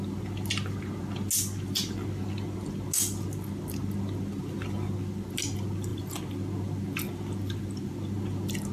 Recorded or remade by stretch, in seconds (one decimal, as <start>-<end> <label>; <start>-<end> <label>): 0.0-8.7 recorded